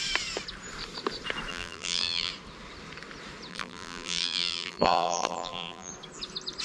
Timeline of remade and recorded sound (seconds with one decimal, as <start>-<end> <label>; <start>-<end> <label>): 0.0-1.5 recorded; 1.5-2.3 remade; 2.3-3.5 recorded; 3.5-5.9 remade; 5.9-6.6 recorded